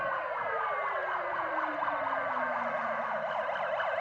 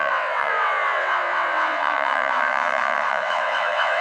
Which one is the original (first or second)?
first